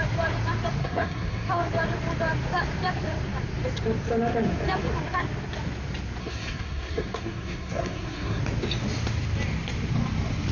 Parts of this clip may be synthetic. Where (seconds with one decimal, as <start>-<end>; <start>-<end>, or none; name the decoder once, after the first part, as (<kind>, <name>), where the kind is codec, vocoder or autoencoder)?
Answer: 0.8-1.5 (codec, SNAC); 6.2-8.4